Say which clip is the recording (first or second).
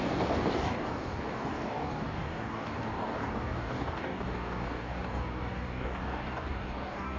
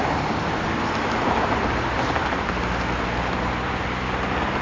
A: second